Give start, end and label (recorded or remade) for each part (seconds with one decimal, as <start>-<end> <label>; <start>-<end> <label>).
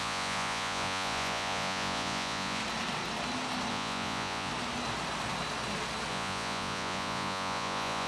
0.0-2.6 remade; 2.6-3.7 recorded; 3.7-4.5 remade; 4.5-6.1 recorded; 6.1-8.1 remade